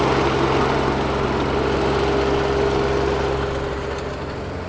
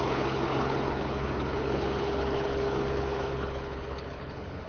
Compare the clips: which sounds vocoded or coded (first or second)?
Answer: second